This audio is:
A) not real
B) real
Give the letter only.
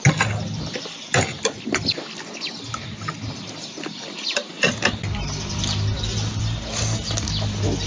B